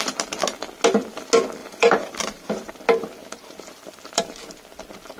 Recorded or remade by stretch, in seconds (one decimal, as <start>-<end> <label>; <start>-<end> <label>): 0.0-1.6 recorded; 1.6-2.7 remade; 2.7-3.2 recorded; 3.2-4.2 remade; 4.2-5.2 recorded